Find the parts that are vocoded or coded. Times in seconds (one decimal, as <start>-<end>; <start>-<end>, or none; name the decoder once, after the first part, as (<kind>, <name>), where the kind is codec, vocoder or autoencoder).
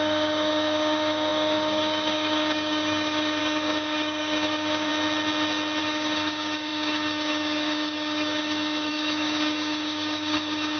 0.0-4.9 (codec, DAC); 5.8-10.8